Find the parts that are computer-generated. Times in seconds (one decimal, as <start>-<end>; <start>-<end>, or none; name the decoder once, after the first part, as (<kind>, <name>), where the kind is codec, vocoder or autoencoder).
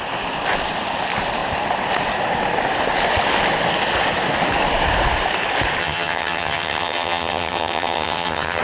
5.8-8.6 (vocoder, HiFi-GAN)